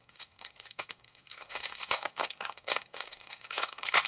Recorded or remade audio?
remade